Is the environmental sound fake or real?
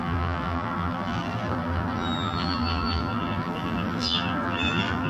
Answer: fake